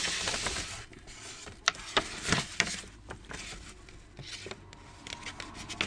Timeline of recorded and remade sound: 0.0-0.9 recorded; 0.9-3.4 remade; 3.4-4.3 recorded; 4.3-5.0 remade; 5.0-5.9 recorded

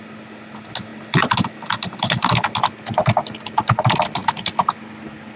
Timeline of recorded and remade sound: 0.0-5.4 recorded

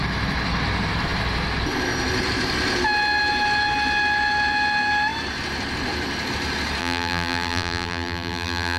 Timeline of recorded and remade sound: 0.0-6.8 recorded; 6.8-8.8 remade

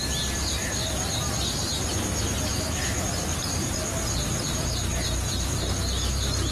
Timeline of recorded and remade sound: 0.0-0.8 recorded; 0.8-3.4 remade; 3.4-4.9 recorded; 4.9-6.5 remade